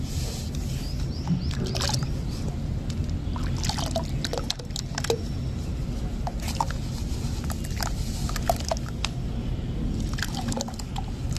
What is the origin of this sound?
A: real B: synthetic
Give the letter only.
A